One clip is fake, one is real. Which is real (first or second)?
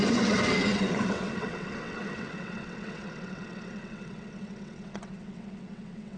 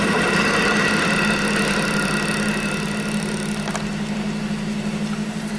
second